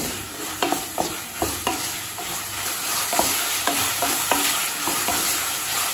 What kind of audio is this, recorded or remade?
remade